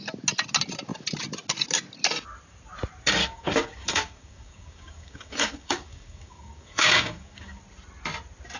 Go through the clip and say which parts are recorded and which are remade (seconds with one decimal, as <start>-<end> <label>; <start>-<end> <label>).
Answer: 0.0-3.2 recorded; 3.2-7.6 remade; 7.6-8.6 recorded